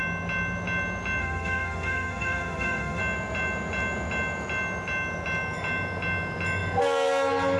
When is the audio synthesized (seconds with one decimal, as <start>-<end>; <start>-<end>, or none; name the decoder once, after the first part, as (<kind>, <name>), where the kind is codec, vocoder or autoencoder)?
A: 1.2-3.0 (autoencoder, DAC-VAE)